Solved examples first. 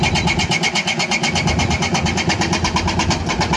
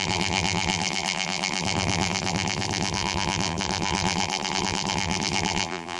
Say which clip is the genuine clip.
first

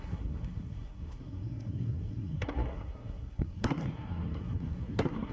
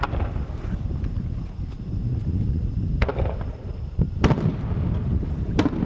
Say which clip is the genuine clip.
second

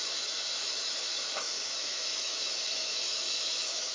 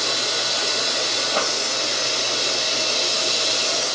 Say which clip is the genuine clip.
second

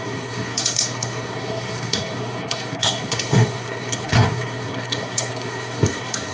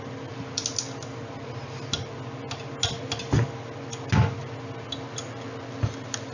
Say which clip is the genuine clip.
second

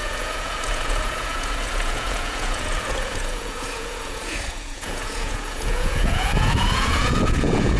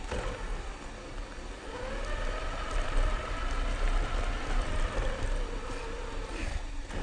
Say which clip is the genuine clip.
second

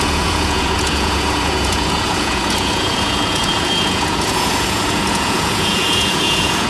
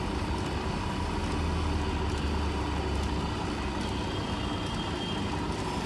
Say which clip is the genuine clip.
second